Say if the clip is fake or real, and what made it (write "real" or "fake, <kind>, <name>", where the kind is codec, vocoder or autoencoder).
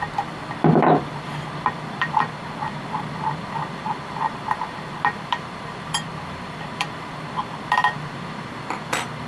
fake, vocoder, BigVGAN v2